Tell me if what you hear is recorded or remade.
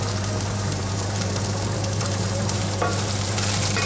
remade